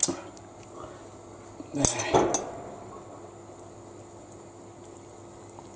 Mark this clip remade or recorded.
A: recorded